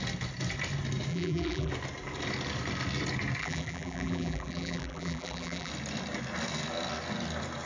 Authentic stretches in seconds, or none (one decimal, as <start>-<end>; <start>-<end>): 0.0-1.1; 1.7-3.4; 5.7-7.7